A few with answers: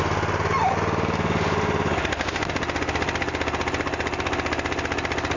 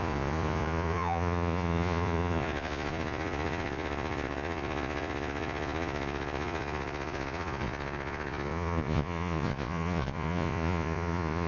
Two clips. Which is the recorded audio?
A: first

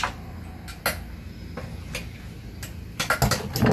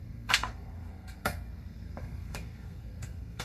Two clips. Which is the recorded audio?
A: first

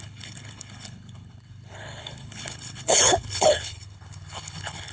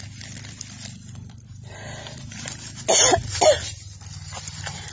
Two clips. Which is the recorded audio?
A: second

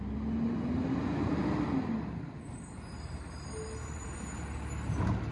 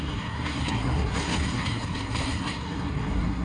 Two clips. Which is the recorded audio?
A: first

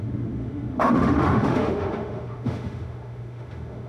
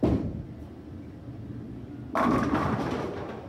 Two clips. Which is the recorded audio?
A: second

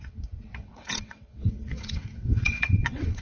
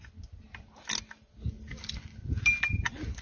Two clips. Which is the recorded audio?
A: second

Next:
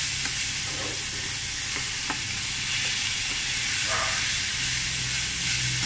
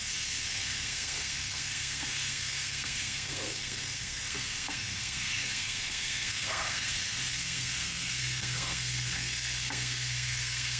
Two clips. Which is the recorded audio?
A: first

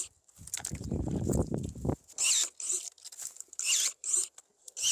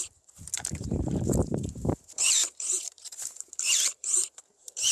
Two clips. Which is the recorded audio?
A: first